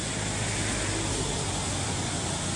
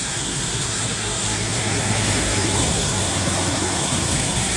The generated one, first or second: second